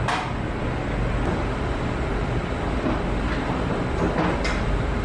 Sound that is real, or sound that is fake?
real